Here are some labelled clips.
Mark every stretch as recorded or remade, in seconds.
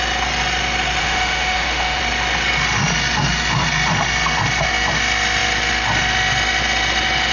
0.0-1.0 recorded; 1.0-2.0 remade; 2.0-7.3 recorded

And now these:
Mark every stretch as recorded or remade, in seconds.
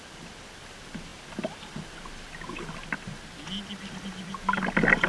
0.0-5.1 recorded